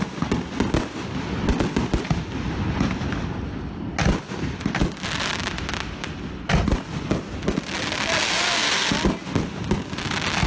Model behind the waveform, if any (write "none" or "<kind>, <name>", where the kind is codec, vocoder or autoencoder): none